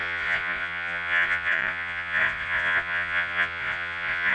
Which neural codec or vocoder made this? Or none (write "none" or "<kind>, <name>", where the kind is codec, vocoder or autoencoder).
vocoder, Vocos